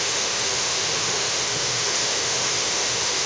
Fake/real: fake